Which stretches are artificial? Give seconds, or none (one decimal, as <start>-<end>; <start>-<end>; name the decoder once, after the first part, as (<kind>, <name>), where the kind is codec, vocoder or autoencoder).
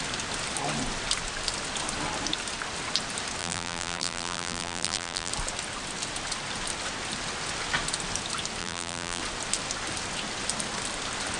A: 3.4-5.3 (vocoder, BigVGAN v2); 8.6-9.2